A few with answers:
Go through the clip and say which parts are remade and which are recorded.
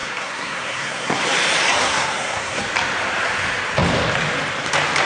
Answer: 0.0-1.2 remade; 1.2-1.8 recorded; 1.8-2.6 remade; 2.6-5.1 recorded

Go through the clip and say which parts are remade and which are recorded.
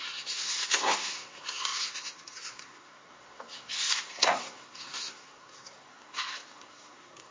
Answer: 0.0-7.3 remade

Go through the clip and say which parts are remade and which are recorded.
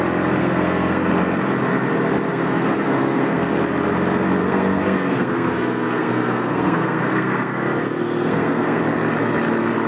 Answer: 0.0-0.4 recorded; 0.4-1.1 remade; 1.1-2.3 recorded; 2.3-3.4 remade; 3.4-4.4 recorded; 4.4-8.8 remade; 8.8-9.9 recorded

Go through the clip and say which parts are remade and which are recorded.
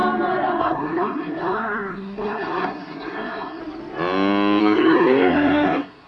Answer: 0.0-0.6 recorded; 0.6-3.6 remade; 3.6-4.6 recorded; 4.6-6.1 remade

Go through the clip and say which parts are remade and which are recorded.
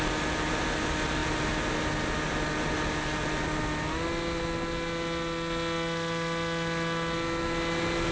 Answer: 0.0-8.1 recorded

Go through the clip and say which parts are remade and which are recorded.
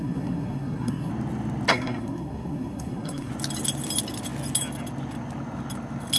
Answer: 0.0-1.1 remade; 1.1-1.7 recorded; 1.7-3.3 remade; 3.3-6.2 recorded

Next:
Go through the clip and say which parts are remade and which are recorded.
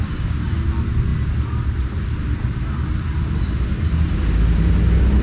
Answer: 0.0-5.2 recorded